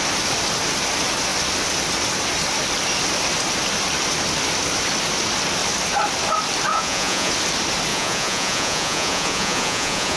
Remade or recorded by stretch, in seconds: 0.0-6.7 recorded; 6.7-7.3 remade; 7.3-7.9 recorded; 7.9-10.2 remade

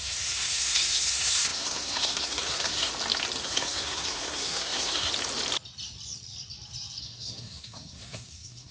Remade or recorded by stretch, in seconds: 0.0-2.9 remade; 2.9-3.4 recorded; 3.4-5.1 remade; 5.1-7.0 recorded; 7.0-8.7 remade